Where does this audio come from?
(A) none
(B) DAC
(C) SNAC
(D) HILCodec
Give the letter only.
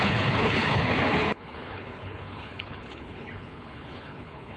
D